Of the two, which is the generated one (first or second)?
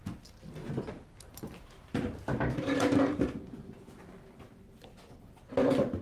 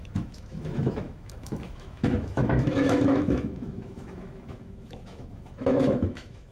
second